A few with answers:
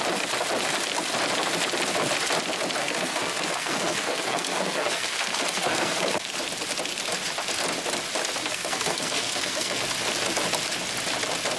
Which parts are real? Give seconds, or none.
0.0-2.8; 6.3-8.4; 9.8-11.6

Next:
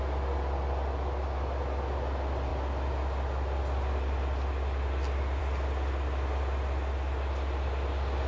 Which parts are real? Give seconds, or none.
0.0-8.3